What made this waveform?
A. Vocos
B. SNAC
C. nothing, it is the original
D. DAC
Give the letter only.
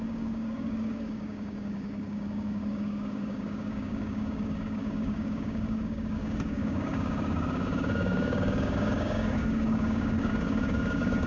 D